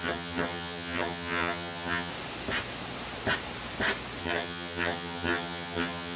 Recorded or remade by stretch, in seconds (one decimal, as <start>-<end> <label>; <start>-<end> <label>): 0.0-2.1 remade; 2.1-4.2 recorded; 4.2-6.2 remade